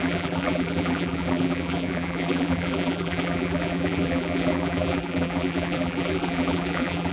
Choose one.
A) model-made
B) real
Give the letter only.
A